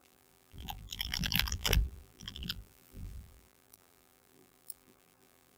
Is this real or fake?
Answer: fake